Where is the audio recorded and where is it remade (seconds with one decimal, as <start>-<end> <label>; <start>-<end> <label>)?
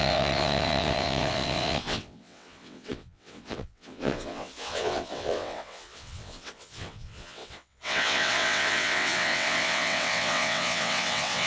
0.0-11.5 remade